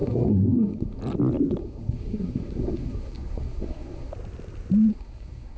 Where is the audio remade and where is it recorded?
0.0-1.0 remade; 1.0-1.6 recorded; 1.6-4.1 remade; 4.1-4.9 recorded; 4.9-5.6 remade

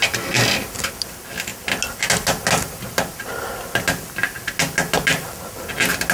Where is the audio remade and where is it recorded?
0.0-6.1 recorded

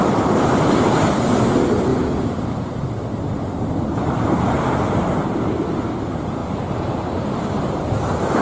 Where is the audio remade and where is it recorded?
0.0-8.4 recorded

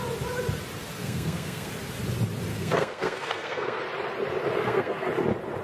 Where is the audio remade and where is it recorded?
0.0-1.0 recorded; 1.0-1.7 remade; 1.7-2.5 recorded; 2.5-3.8 remade; 3.8-4.6 recorded; 4.6-5.1 remade; 5.1-5.6 recorded

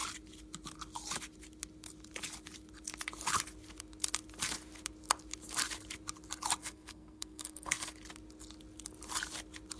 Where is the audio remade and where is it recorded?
0.0-6.6 recorded; 6.6-7.9 remade; 7.9-9.8 recorded

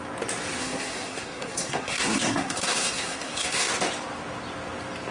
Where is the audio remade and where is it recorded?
0.0-0.6 recorded; 0.6-3.7 remade; 3.7-5.1 recorded

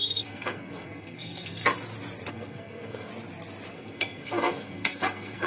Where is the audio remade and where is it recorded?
0.0-1.6 remade; 1.6-2.3 recorded; 2.3-3.1 remade; 3.1-3.7 recorded; 3.7-5.5 remade